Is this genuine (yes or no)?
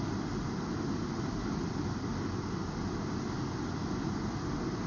yes